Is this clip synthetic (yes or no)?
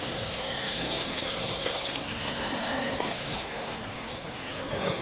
yes